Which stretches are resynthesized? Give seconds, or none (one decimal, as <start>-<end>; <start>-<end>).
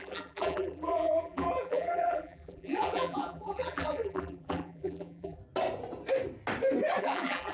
0.0-5.4; 7.0-7.5